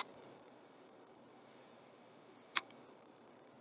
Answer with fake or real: fake